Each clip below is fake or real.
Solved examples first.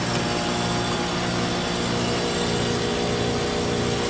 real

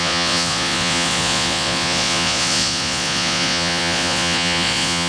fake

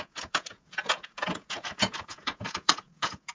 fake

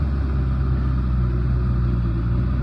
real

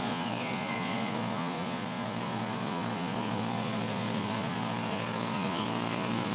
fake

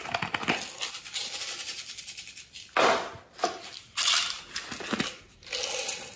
real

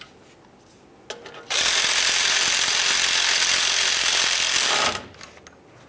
real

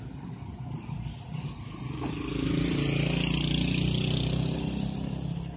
real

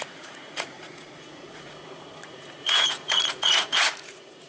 fake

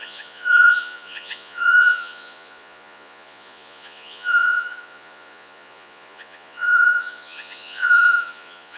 fake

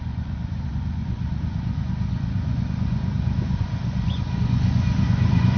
fake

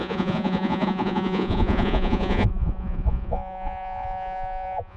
fake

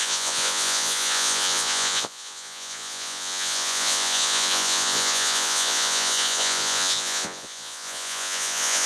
fake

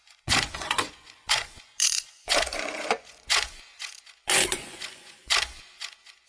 fake